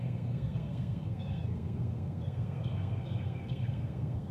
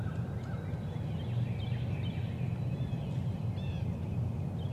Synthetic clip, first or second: first